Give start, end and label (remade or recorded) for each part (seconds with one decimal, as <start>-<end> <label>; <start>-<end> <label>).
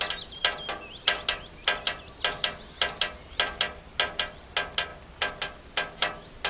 0.0-6.5 recorded